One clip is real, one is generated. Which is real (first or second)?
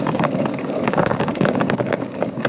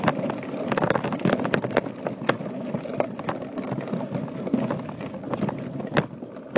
second